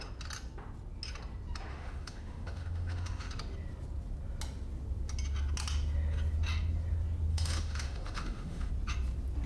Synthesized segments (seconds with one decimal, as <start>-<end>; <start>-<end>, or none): 1.7-3.3; 7.3-8.7